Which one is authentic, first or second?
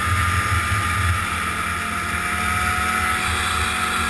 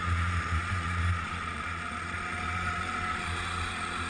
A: first